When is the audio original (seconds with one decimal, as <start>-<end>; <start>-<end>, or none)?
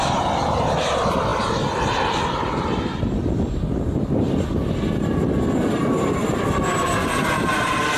0.0-8.0